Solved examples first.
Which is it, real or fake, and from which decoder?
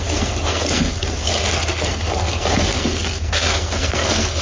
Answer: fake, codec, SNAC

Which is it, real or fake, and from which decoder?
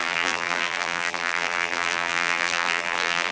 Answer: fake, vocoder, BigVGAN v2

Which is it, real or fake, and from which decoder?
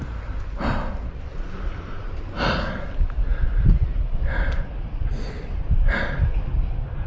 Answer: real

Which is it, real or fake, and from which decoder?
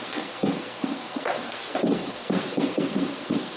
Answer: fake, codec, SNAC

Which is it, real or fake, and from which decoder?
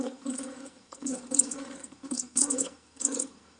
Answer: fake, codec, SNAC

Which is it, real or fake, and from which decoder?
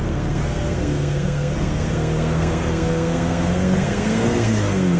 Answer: fake, codec, SNAC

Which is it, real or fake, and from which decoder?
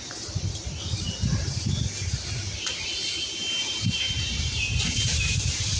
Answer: fake, vocoder, BigVGAN v2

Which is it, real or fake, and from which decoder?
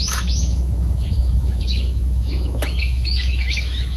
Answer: fake, autoencoder, DAC-VAE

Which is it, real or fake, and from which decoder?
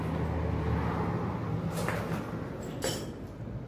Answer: real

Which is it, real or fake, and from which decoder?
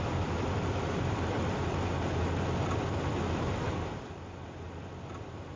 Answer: real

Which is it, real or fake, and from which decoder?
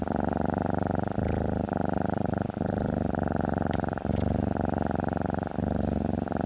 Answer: real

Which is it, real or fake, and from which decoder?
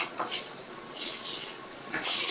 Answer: fake, vocoder, Vocos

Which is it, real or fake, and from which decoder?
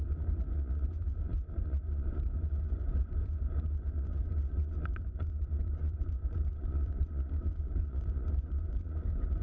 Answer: fake, vocoder, Vocos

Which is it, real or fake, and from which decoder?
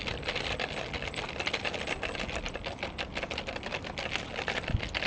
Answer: real